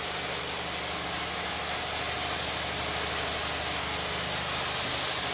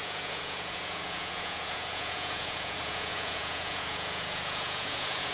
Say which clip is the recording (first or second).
first